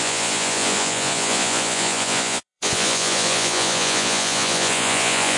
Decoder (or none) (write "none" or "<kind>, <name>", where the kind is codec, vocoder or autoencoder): vocoder, Vocos